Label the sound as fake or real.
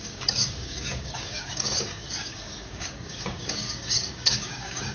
fake